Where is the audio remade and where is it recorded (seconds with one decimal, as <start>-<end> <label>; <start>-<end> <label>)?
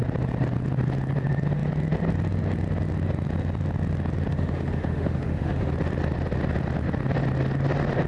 0.0-4.3 recorded; 4.3-5.7 remade; 5.7-8.1 recorded